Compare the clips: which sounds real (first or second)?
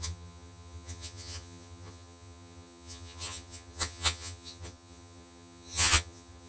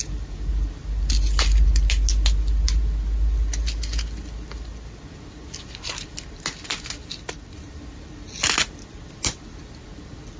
second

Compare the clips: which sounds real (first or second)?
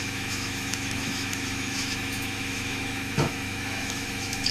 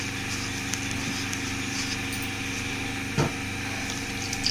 second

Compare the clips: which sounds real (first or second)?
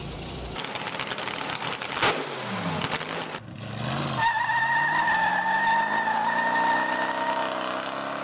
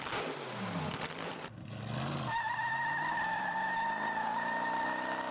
first